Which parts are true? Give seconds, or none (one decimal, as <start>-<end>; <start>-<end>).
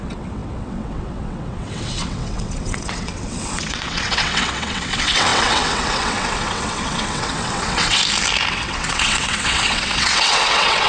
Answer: 8.0-8.5